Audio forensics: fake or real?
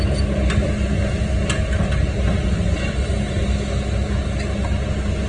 real